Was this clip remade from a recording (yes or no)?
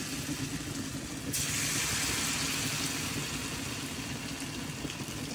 no